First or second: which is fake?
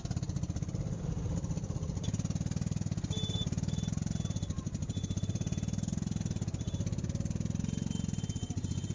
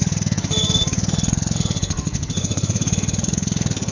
second